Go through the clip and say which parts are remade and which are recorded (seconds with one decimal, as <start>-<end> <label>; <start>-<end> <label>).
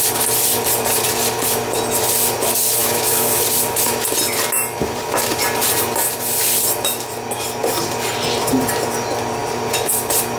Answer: 0.0-2.8 recorded; 2.8-3.4 remade; 3.4-10.4 recorded